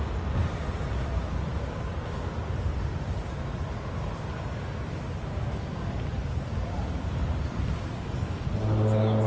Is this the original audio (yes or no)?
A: yes